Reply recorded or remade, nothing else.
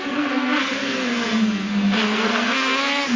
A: remade